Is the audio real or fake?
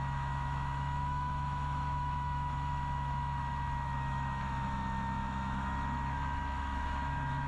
fake